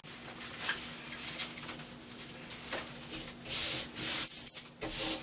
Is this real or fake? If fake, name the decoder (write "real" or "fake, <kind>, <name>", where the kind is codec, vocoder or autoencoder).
real